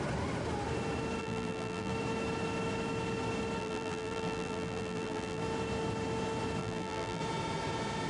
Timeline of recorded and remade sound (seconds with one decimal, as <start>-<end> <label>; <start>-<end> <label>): 0.0-1.2 recorded; 1.2-1.9 remade; 1.9-3.6 recorded; 3.6-5.4 remade; 5.4-6.6 recorded; 6.6-7.2 remade; 7.2-8.1 recorded